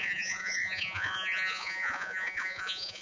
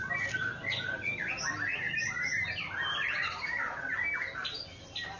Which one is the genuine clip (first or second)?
second